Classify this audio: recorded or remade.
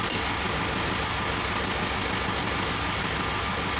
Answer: recorded